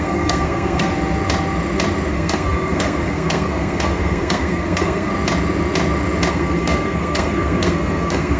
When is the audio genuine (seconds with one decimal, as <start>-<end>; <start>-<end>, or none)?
0.9-2.1; 5.1-6.3